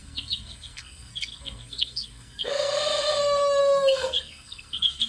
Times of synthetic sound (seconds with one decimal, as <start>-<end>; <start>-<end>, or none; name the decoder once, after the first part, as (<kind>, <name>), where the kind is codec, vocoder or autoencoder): 0.0-3.1 (codec, SNAC); 3.6-5.1